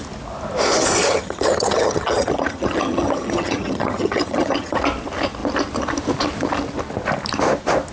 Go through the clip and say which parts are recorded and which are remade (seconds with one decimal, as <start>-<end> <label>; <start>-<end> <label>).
0.0-1.0 recorded; 1.0-4.8 remade; 4.8-7.9 recorded